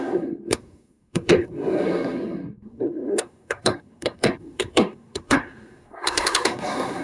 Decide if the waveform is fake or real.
fake